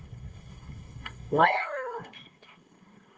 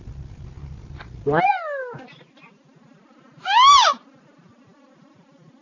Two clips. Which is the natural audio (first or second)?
second